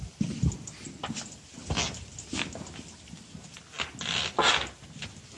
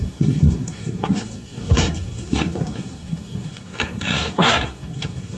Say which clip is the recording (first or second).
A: first